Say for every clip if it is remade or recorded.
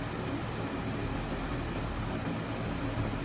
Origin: recorded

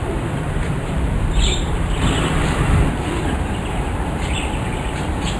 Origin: remade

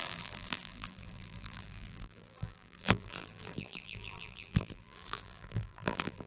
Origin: remade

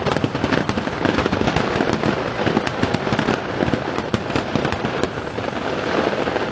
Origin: recorded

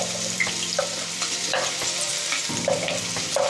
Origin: remade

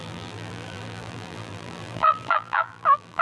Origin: remade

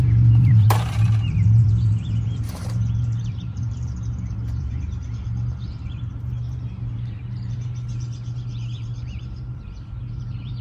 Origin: remade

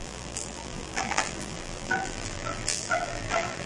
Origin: remade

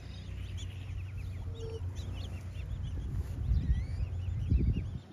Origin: recorded